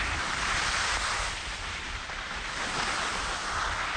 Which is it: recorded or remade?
recorded